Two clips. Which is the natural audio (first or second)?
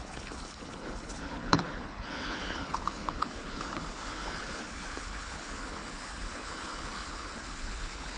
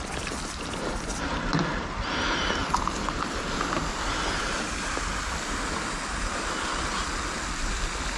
second